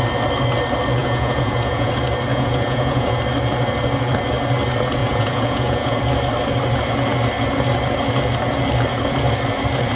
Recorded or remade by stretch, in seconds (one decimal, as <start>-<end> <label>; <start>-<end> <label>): 0.0-1.0 recorded; 1.0-1.9 remade; 1.9-2.3 recorded; 2.3-3.2 remade; 3.2-5.0 recorded; 5.0-6.0 remade; 6.0-10.0 recorded